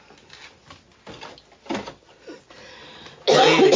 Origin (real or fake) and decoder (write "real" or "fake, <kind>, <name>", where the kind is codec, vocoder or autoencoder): real